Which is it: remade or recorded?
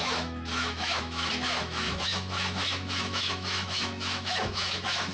remade